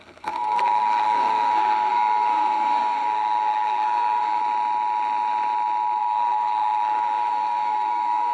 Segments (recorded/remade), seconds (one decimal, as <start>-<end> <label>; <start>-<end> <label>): 0.0-4.4 remade; 4.4-6.0 recorded; 6.0-8.3 remade